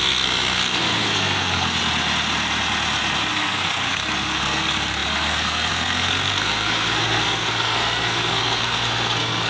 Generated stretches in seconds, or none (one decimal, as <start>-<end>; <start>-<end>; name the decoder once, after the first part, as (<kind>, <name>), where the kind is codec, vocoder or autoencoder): 0.0-1.8 (codec, SNAC); 3.3-9.5